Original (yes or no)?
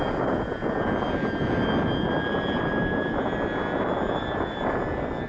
yes